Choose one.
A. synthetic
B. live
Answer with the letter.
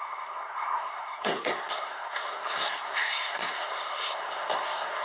A